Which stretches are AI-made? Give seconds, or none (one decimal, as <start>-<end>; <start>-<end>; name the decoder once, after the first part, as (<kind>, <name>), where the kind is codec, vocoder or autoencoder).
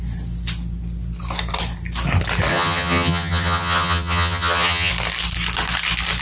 2.5-4.9 (vocoder, HiFi-GAN)